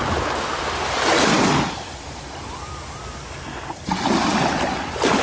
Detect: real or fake real